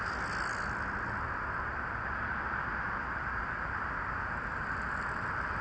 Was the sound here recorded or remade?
recorded